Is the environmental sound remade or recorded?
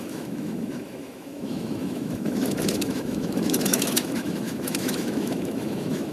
remade